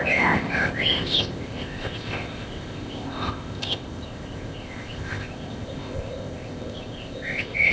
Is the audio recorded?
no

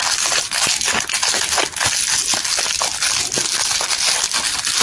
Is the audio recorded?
yes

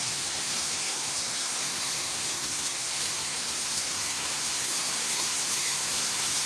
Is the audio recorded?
no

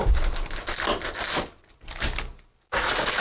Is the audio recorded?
yes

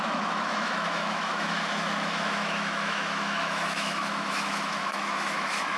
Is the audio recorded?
no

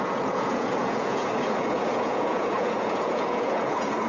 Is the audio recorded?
no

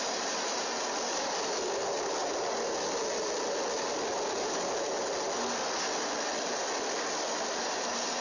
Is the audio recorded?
yes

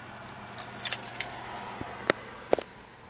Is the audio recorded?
yes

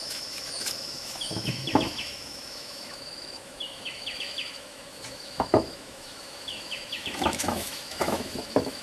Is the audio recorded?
no